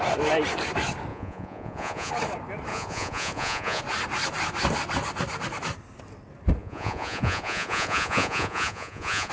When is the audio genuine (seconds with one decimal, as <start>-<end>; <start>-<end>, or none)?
0.0-1.1; 2.1-2.7; 3.8-6.6